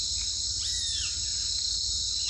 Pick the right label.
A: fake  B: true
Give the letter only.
B